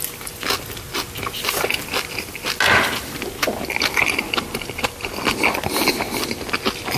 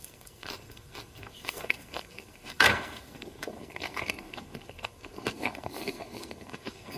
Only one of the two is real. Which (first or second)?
first